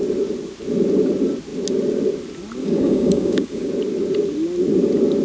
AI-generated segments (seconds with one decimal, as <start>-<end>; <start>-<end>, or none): 2.6-3.7